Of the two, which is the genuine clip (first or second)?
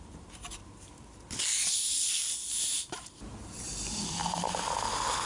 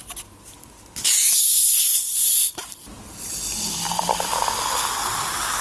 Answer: second